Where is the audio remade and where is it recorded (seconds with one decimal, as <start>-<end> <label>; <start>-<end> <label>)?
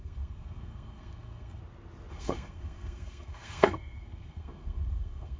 0.0-1.6 remade; 1.6-2.1 recorded; 2.1-5.4 remade